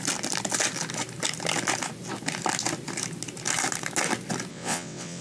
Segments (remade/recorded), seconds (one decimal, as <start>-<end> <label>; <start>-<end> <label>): 0.0-4.5 recorded; 4.5-5.2 remade